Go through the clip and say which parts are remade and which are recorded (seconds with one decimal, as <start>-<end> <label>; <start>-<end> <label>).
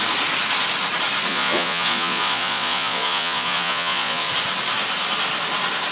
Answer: 0.0-1.3 recorded; 1.3-4.3 remade; 4.3-5.9 recorded